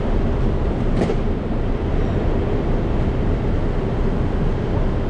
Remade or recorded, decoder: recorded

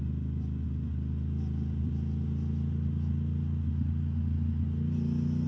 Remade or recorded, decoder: recorded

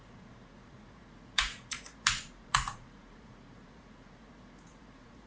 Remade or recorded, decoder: remade, vocoder, Vocos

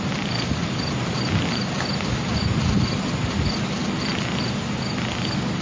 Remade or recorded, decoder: recorded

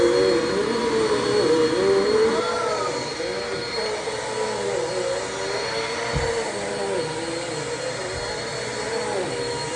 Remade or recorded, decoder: recorded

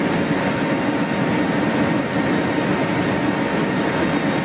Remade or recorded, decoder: recorded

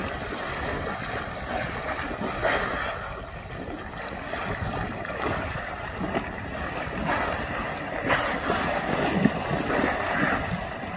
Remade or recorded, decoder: recorded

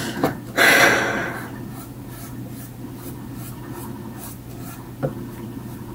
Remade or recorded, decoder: recorded